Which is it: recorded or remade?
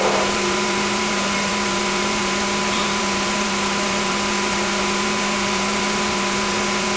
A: remade